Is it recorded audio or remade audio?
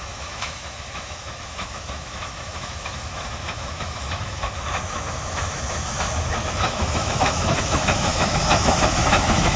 remade